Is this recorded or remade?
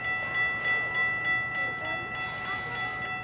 recorded